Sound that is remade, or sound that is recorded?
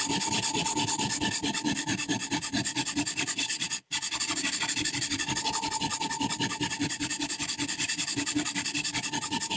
remade